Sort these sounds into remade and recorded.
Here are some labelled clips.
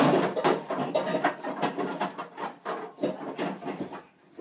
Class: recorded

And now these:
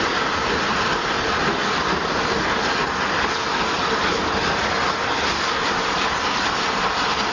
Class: recorded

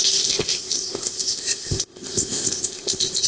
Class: remade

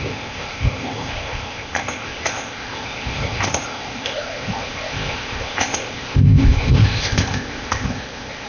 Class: remade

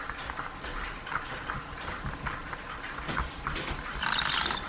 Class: recorded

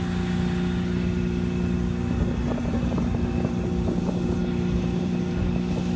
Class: recorded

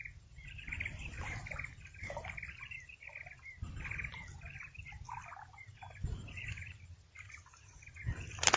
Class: recorded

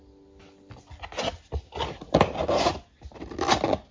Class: recorded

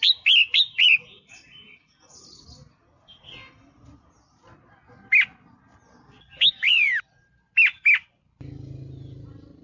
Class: recorded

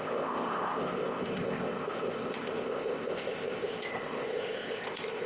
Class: remade